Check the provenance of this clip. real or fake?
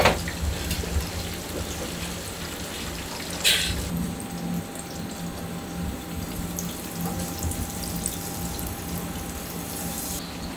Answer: real